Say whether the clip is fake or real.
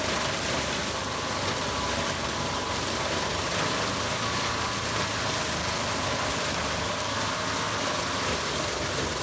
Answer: real